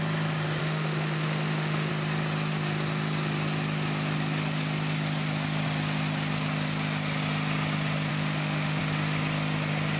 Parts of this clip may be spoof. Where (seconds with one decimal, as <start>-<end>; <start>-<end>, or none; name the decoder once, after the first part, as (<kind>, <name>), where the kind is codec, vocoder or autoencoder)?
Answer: 0.6-1.9 (autoencoder, DAC-VAE); 8.1-8.8